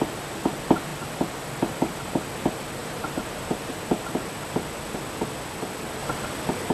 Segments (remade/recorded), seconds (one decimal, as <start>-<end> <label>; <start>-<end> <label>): 0.0-2.8 recorded; 2.8-3.7 remade; 3.7-6.7 recorded